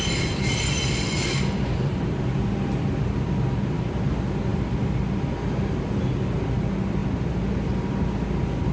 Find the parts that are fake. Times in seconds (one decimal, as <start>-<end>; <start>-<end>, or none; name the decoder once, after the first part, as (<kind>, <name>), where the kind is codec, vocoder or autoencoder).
0.5-1.2 (vocoder, BigVGAN v2); 4.5-5.1